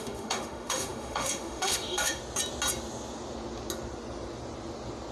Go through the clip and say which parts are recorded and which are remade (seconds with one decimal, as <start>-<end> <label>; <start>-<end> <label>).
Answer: 0.0-2.2 remade; 2.2-5.1 recorded